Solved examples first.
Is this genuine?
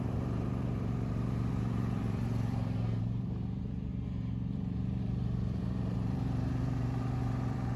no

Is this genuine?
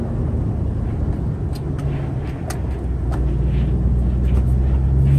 yes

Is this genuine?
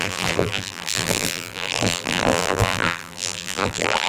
no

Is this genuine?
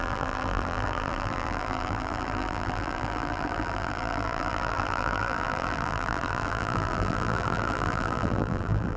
no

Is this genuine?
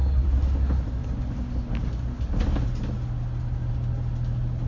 yes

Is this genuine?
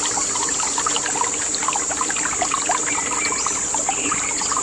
yes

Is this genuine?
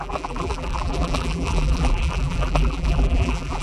no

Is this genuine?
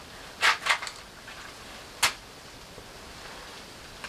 yes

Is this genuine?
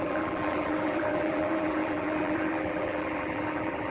no